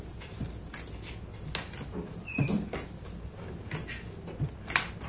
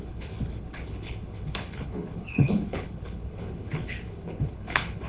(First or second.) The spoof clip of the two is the second